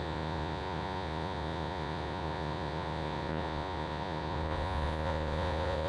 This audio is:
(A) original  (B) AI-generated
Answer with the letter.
B